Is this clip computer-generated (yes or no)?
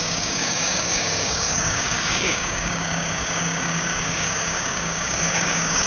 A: yes